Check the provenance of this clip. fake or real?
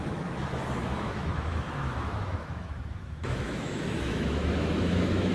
fake